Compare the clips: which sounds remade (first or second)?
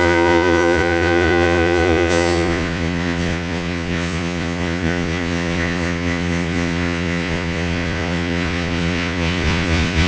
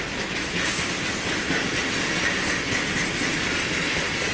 first